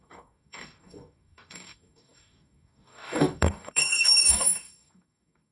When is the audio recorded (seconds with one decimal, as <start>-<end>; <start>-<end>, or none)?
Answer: none